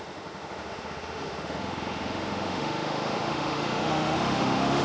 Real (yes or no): no